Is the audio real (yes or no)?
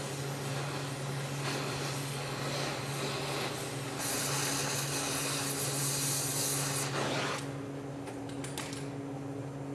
yes